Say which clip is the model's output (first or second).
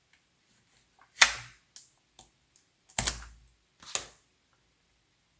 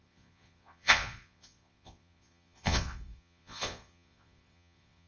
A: second